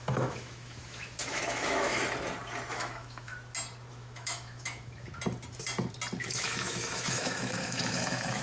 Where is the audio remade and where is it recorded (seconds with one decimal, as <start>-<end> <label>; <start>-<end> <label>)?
0.0-2.0 remade; 2.0-2.7 recorded; 2.7-3.3 remade; 3.3-3.9 recorded; 3.9-5.1 remade; 5.1-6.2 recorded; 6.2-8.4 remade